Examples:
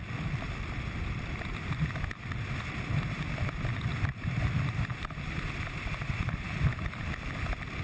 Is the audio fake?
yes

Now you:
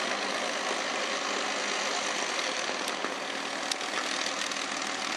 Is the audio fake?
no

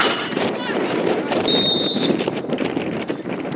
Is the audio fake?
yes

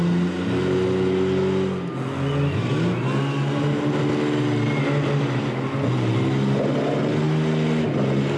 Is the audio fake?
no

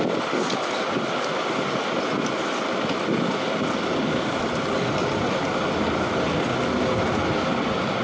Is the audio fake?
no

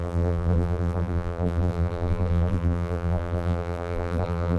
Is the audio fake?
yes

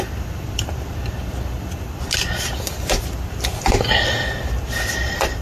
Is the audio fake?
yes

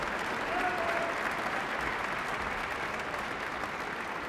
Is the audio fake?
no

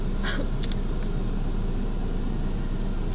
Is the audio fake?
no